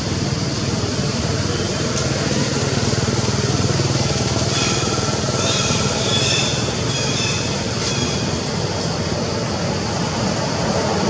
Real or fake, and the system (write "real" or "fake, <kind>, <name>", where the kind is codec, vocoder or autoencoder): real